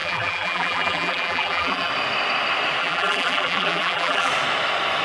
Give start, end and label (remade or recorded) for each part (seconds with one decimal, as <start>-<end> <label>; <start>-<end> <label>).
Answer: 0.0-1.9 remade; 1.9-2.8 recorded; 2.8-4.3 remade; 4.3-5.0 recorded